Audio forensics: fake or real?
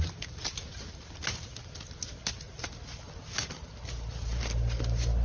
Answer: real